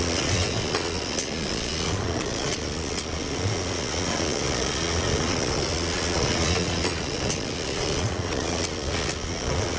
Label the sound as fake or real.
fake